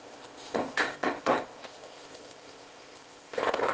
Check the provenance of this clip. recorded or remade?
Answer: remade